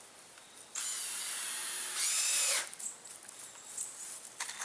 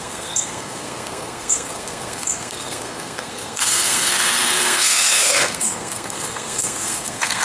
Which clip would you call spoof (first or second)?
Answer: second